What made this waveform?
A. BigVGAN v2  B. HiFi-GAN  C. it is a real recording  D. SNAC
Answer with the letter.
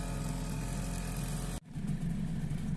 C